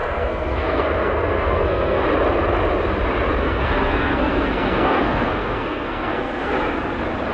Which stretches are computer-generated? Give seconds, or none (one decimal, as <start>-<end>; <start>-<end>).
0.0-2.0; 3.4-6.5